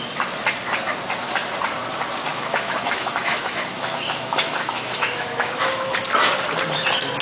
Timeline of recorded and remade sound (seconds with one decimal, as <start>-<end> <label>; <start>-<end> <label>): 0.0-2.3 recorded; 2.3-6.0 remade; 6.0-7.2 recorded